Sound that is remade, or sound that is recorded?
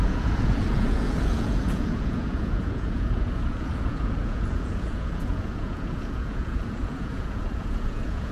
remade